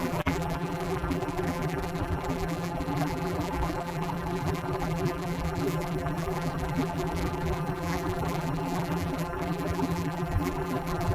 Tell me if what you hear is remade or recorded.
remade